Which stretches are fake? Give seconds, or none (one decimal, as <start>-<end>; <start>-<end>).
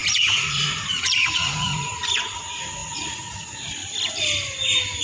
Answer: 0.0-3.8